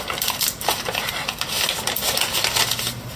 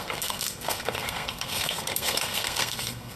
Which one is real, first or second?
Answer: first